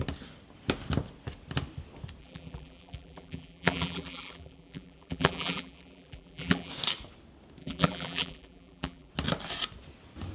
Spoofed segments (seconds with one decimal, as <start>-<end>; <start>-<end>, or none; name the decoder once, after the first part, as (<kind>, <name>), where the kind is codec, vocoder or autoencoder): 2.2-6.7 (vocoder, BigVGAN v2); 7.6-9.1